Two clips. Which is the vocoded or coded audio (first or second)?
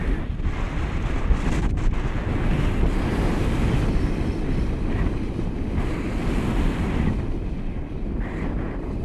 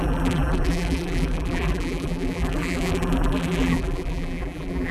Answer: second